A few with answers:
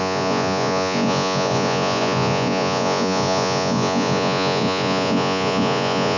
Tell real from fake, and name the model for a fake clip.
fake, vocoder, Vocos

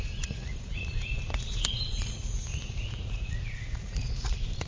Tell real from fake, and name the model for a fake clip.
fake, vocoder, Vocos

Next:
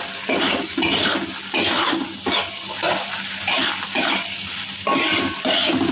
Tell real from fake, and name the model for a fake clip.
real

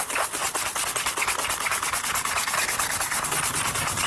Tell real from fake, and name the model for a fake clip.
real